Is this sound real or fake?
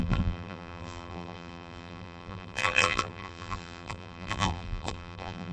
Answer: fake